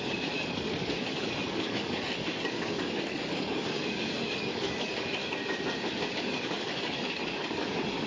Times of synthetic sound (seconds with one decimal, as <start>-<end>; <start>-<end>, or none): 0.0-5.2; 6.1-8.1